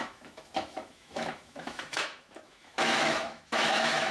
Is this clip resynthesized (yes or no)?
yes